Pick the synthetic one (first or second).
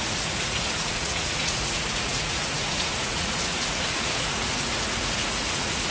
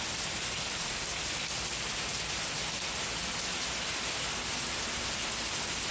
first